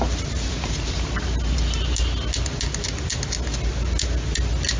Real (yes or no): yes